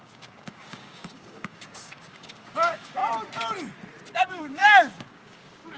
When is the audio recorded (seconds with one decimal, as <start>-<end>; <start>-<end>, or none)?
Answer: 3.0-4.1